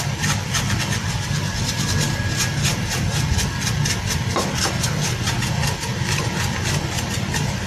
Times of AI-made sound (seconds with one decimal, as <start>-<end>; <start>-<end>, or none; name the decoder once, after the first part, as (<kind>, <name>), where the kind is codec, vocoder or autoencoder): none